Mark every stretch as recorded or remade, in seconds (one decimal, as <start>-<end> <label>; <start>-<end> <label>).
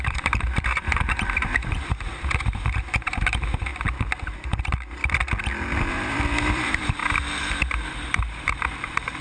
0.0-3.7 remade; 3.7-4.6 recorded; 4.6-5.0 remade; 5.0-5.9 recorded; 5.9-7.0 remade; 7.0-7.9 recorded; 7.9-9.2 remade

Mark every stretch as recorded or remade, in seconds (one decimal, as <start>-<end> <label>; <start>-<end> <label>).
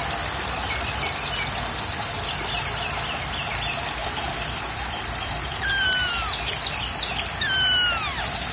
0.0-4.0 recorded; 4.0-6.1 remade; 6.1-8.5 recorded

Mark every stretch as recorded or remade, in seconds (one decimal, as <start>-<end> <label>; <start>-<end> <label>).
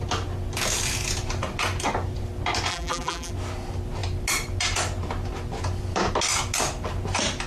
0.0-2.7 recorded; 2.7-3.3 remade; 3.3-7.5 recorded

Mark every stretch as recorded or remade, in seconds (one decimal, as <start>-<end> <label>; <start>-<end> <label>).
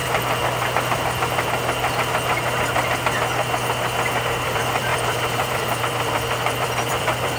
0.0-4.4 recorded; 4.4-7.4 remade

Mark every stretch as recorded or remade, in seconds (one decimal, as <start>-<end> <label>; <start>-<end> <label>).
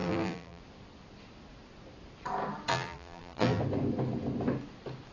0.0-0.6 remade; 0.6-2.7 recorded; 2.7-3.6 remade; 3.6-5.1 recorded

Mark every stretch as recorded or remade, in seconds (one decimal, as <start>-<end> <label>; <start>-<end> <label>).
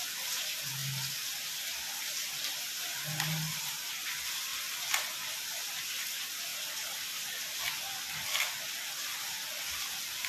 0.0-10.3 recorded